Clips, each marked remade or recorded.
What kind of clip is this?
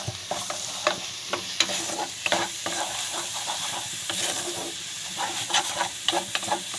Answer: remade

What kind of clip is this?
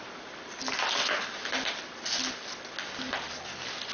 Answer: recorded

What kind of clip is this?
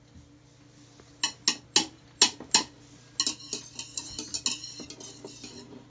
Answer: recorded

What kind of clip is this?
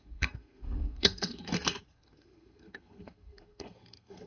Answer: remade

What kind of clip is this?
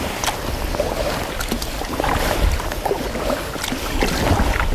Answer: recorded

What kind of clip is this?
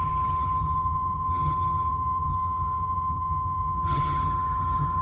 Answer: remade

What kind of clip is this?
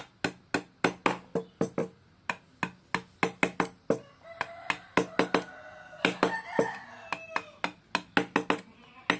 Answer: recorded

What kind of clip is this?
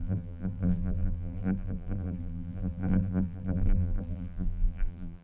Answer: remade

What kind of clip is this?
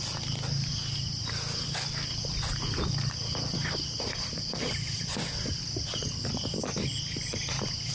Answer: recorded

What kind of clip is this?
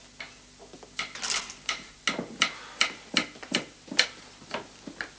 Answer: recorded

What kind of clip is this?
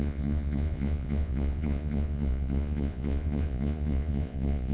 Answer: remade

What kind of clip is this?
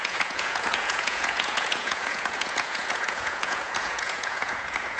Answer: remade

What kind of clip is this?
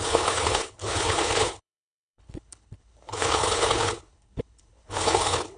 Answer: remade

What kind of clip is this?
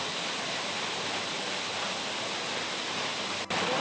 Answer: recorded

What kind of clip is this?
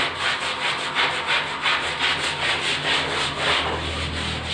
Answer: recorded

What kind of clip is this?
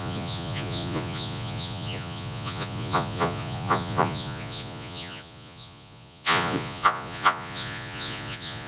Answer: remade